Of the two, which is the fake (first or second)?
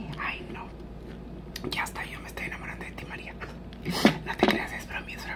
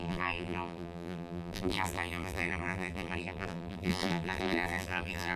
second